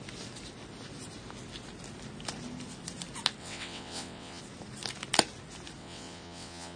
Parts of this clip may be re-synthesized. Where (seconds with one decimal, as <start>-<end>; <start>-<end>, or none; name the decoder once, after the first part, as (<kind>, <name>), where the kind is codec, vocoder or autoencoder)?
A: 3.4-4.4 (vocoder, WaveNeXt); 5.8-6.8